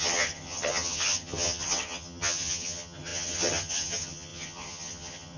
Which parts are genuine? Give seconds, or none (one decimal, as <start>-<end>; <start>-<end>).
none